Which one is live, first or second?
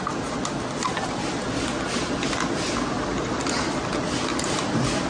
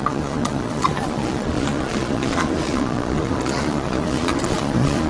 first